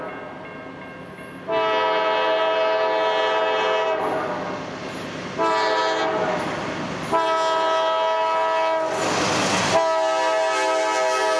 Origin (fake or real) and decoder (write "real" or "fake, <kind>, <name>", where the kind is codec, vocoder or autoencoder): real